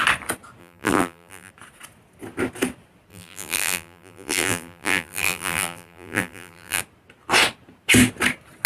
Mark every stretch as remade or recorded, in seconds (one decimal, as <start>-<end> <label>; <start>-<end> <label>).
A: 0.0-0.6 recorded; 0.6-1.5 remade; 1.5-3.1 recorded; 3.1-6.8 remade; 6.8-8.7 recorded